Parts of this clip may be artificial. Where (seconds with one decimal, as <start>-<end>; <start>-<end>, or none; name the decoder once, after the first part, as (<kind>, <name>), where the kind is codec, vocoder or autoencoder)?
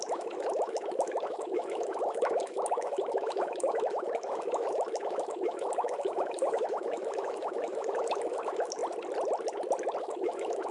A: 0.0-8.8 (autoencoder, DAC-VAE); 10.0-10.7